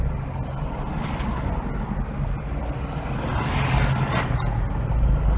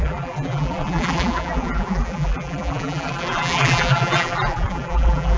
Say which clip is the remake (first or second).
second